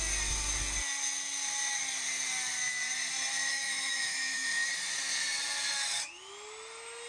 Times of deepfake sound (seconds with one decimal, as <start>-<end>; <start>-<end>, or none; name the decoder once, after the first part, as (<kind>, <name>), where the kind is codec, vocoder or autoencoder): 3.5-4.7 (autoencoder, DAC-VAE)